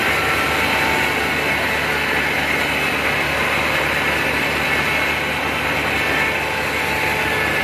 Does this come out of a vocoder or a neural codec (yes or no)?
no